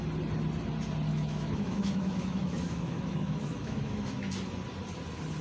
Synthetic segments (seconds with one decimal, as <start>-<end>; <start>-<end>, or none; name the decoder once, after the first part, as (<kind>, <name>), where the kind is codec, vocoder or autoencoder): 1.1-4.3 (autoencoder, DAC-VAE)